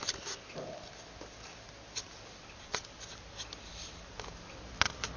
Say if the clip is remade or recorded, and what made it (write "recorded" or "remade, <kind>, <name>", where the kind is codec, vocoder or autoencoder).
recorded